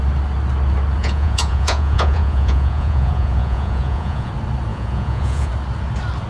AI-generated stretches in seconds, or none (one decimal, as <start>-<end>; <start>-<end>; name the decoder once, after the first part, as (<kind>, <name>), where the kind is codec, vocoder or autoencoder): 1.0-4.3 (vocoder, Vocos); 4.7-5.5